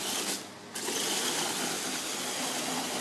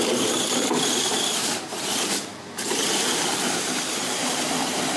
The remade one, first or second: second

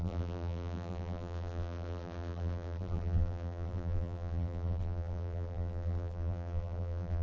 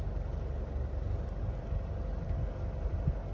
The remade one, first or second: first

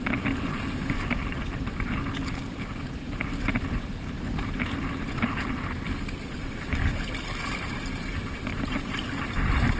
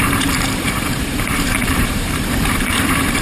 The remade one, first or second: second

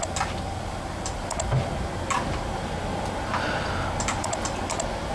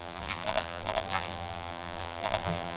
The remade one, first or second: second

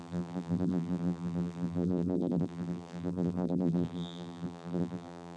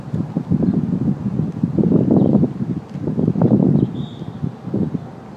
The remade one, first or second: first